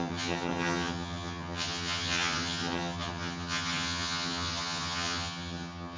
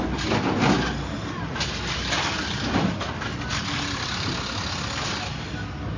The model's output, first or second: first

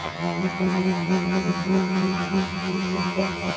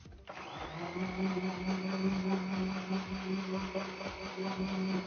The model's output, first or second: first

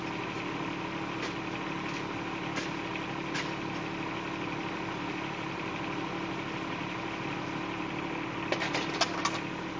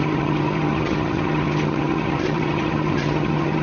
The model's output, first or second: second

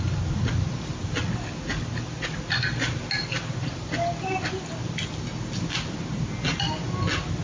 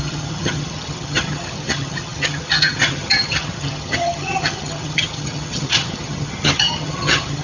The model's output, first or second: second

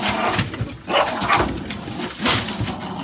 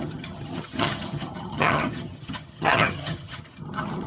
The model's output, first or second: second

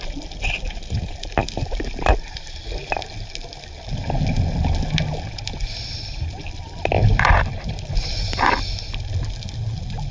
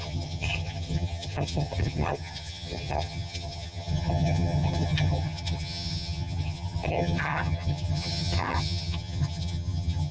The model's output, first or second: second